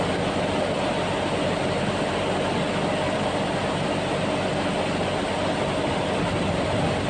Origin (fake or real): real